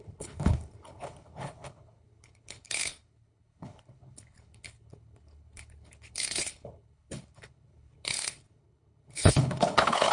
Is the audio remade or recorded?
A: remade